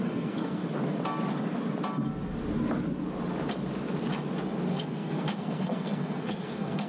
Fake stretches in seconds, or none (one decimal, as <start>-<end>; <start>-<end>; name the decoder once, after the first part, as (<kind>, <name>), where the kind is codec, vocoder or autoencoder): 0.0-0.6 (codec, SNAC); 4.7-6.9